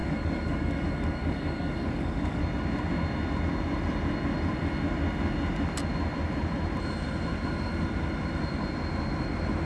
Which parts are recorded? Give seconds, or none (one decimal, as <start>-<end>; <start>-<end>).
2.4-9.7